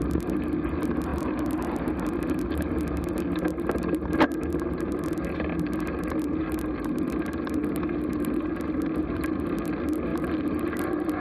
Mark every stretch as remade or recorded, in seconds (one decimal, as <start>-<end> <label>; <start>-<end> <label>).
0.0-11.2 recorded